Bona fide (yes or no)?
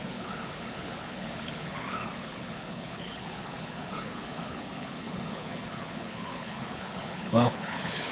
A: no